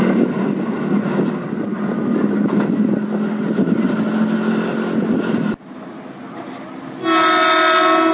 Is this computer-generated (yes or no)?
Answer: no